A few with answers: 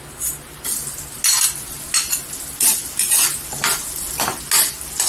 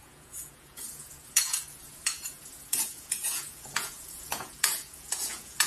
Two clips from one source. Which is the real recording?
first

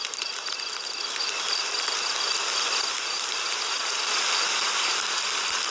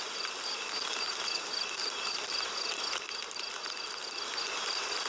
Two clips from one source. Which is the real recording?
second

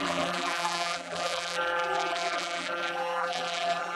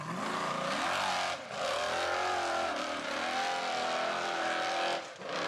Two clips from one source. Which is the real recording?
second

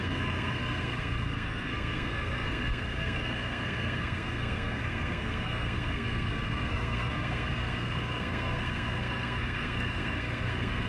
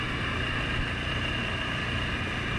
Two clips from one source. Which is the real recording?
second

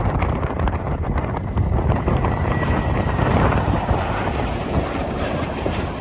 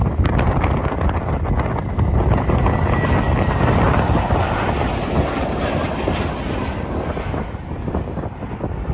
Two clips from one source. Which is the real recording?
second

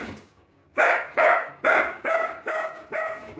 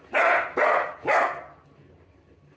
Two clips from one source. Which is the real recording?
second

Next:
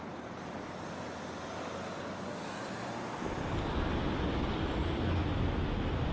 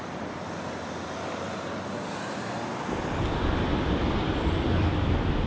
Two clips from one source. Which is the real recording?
first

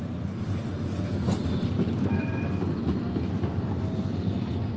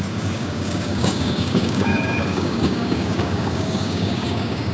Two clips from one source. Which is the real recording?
first